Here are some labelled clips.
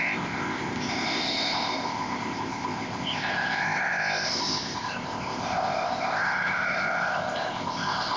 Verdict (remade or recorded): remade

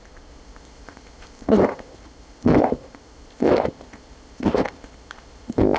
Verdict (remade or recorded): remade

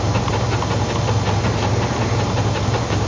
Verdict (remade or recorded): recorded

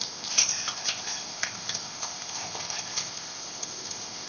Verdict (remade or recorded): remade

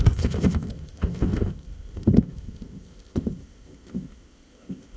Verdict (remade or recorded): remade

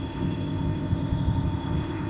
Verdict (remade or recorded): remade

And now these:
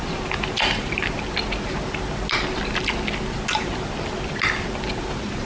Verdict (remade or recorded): recorded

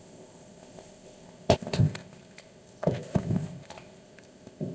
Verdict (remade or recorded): remade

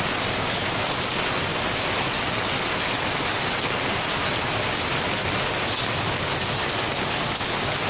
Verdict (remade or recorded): recorded